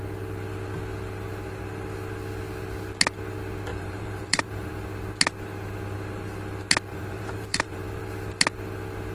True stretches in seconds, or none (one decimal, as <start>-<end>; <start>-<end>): 0.0-3.7; 4.7-6.9; 8.0-9.1